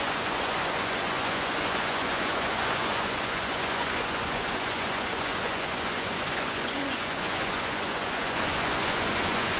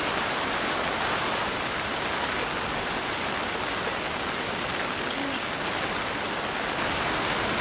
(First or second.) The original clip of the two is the second